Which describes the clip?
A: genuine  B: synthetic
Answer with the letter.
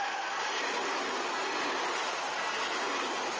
A